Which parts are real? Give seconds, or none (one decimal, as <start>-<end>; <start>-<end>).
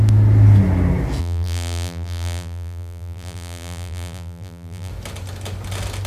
0.0-1.2; 4.9-6.1